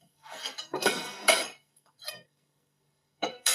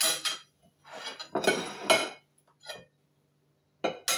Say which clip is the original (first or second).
second